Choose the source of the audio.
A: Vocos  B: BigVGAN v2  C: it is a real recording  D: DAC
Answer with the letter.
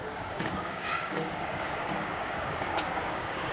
D